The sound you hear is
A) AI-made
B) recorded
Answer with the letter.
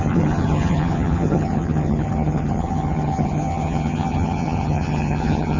A